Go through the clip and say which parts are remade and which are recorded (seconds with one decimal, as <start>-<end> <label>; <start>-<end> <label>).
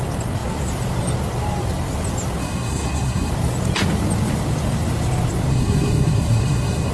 0.0-2.4 recorded; 2.4-3.3 remade; 3.3-5.5 recorded; 5.5-6.9 remade